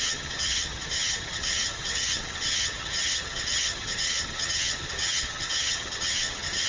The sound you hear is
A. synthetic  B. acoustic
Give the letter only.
A